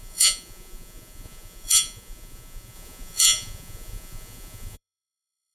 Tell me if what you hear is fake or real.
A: fake